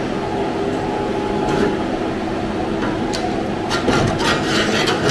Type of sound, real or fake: real